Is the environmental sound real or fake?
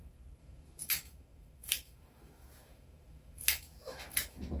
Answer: fake